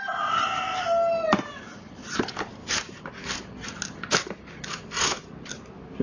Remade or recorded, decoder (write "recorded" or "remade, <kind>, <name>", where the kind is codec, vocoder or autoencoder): recorded